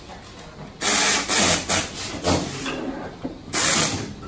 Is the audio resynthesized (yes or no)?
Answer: no